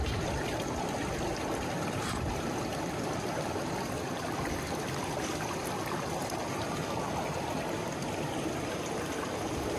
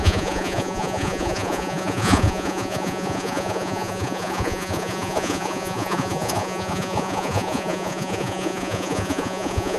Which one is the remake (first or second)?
second